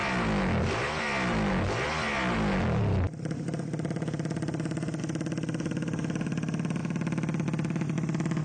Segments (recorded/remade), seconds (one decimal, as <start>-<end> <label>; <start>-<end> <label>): 0.0-8.4 recorded